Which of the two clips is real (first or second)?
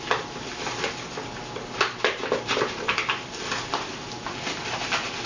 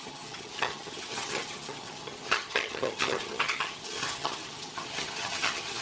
first